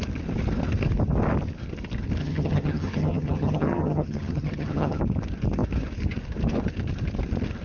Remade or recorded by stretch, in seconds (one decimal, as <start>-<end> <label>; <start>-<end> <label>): 0.0-2.2 recorded; 2.2-5.0 remade; 5.0-7.6 recorded